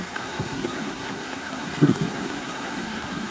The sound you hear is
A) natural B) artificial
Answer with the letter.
B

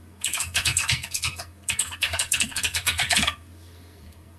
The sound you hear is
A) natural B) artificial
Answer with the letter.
B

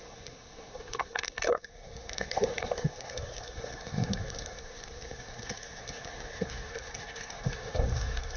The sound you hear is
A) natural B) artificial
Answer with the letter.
B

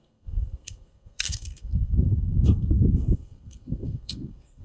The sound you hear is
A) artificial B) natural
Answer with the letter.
A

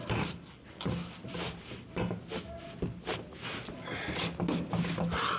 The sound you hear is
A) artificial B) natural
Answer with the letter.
B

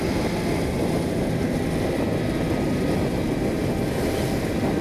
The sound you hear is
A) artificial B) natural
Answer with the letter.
B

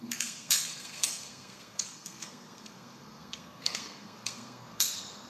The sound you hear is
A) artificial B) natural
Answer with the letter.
A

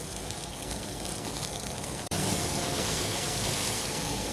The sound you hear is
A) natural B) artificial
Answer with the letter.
B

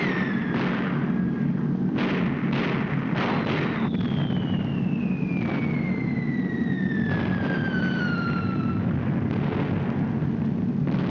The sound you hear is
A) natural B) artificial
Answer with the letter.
A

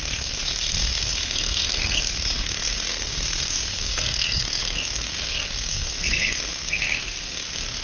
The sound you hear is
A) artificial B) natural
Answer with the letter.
A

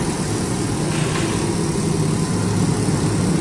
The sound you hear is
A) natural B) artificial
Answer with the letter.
A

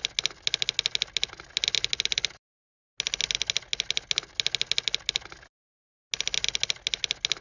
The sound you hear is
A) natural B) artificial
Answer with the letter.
A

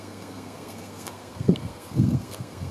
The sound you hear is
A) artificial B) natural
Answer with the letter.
A